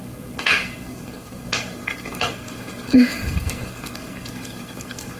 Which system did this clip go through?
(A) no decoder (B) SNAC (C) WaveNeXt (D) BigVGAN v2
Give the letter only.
B